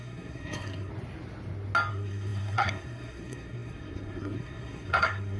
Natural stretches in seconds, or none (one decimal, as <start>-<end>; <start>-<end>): 0.9-1.9